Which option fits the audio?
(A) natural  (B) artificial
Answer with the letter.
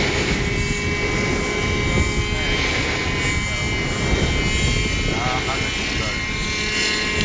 A